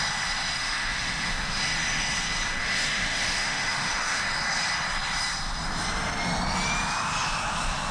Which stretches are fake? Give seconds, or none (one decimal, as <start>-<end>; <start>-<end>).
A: 0.6-1.6; 2.6-4.2